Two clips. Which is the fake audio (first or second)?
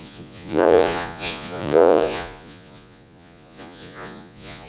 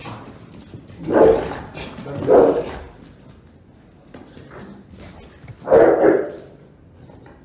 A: first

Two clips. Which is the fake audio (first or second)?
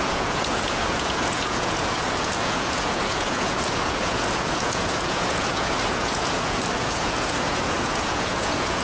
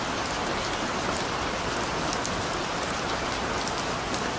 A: first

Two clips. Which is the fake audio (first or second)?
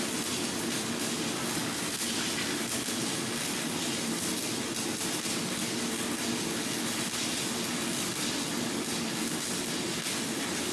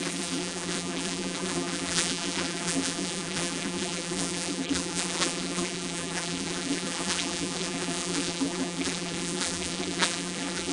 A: second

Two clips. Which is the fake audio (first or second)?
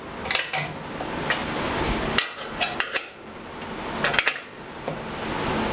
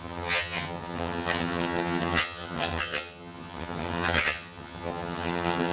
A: second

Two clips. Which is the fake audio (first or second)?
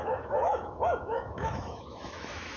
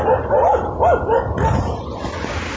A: first